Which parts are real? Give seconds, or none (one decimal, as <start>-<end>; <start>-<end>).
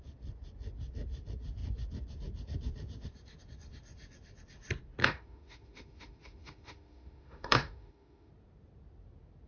0.0-5.0; 8.3-9.5